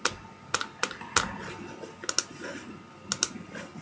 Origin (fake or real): real